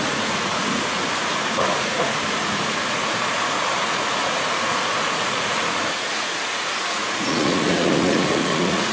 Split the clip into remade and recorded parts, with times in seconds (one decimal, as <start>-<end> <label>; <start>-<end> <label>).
0.0-8.9 remade